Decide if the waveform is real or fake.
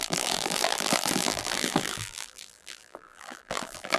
fake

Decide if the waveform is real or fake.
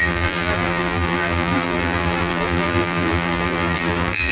fake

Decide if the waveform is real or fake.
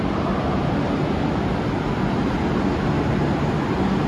real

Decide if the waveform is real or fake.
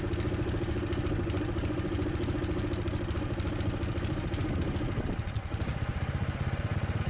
real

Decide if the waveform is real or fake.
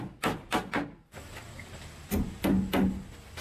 real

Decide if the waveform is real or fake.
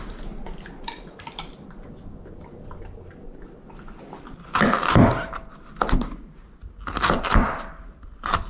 real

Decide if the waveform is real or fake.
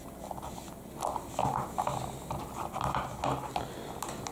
real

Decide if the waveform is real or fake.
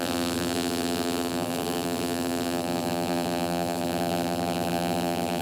fake